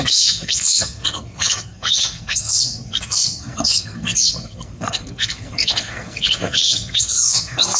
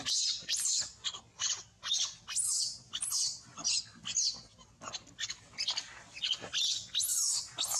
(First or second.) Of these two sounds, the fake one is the first